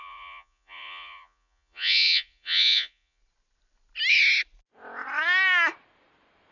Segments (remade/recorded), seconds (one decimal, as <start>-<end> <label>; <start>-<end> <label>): 0.0-3.2 remade; 3.2-6.5 recorded